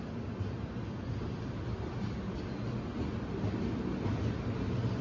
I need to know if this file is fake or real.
real